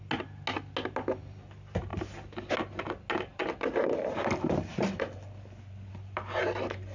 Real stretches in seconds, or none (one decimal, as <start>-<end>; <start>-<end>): 0.0-3.3; 6.4-6.9